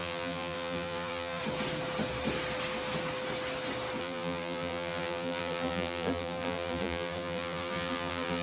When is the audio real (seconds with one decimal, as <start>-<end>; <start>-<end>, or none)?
1.4-4.0